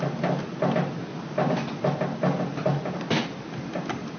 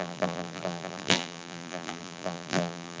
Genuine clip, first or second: first